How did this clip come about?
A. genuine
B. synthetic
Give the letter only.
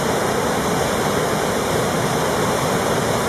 A